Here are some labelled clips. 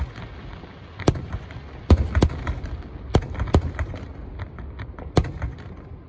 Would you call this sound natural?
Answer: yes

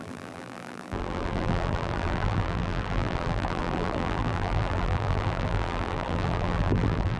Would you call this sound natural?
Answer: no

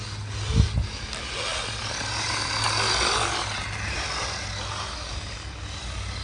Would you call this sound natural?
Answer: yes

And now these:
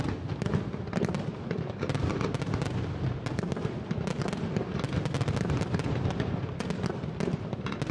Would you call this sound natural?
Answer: yes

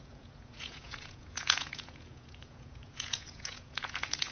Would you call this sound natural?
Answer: no